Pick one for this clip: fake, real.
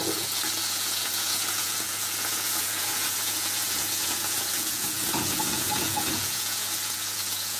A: fake